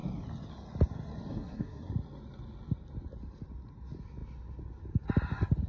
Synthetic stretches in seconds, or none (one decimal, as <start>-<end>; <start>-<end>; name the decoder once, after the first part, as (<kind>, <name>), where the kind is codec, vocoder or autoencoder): 1.3-1.9 (codec, SNAC)